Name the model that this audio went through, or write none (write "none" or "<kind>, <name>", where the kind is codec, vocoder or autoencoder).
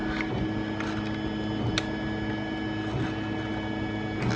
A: none